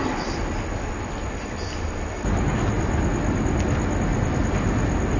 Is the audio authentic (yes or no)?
yes